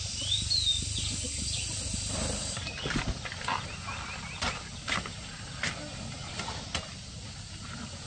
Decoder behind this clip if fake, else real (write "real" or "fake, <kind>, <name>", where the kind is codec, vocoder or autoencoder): real